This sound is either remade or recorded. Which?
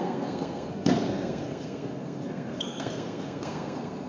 remade